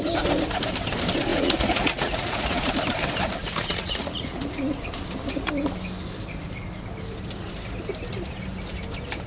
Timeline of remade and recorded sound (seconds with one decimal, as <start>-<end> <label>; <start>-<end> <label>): 0.0-1.3 recorded; 1.3-2.7 remade; 2.7-3.4 recorded; 3.4-4.6 remade; 4.6-9.3 recorded